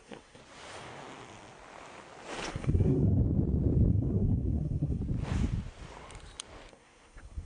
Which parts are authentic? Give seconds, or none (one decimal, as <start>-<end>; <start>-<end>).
0.4-2.5; 3.2-3.9; 5.0-6.7

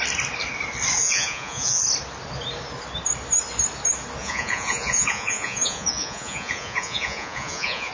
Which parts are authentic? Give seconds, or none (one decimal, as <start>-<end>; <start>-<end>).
0.0-1.0; 1.8-4.2

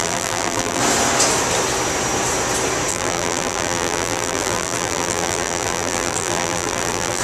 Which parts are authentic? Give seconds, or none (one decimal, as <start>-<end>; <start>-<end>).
0.8-2.9

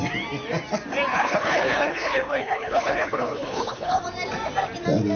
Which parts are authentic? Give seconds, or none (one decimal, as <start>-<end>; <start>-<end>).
0.0-1.1; 4.0-5.2